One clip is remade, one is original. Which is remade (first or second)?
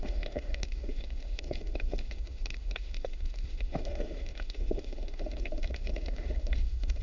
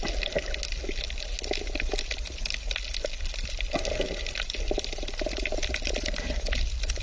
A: first